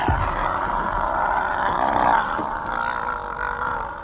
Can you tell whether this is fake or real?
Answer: real